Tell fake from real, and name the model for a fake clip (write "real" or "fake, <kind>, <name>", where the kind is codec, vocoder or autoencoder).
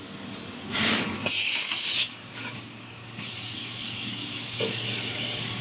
fake, codec, DAC